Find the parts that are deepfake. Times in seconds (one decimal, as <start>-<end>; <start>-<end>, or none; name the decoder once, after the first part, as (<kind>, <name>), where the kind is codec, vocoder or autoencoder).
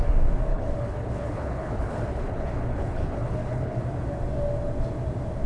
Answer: 0.5-3.8 (codec, HILCodec)